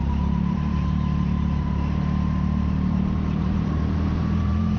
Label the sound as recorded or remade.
remade